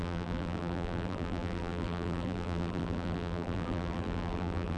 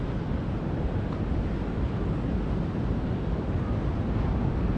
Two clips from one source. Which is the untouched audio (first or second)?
second